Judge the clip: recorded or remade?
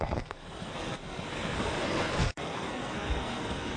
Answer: remade